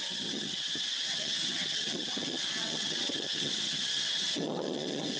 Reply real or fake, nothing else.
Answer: fake